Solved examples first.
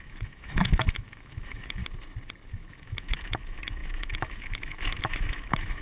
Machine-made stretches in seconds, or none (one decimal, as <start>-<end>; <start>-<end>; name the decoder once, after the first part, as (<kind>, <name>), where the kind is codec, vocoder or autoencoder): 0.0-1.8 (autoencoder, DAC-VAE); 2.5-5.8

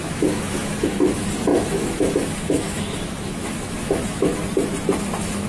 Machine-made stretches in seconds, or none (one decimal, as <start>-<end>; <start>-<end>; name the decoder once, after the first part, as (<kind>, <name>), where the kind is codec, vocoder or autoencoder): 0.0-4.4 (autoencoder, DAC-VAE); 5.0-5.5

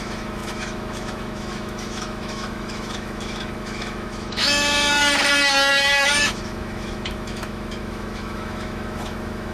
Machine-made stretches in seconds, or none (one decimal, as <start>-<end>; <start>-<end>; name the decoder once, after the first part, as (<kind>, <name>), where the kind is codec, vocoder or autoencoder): 0.0-5.0 (autoencoder, DAC-VAE); 5.7-9.5

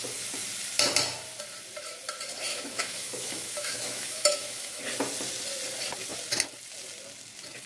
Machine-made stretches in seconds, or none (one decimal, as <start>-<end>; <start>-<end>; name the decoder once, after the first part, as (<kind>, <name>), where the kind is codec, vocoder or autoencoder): 2.5-4.8 (autoencoder, DAC-VAE)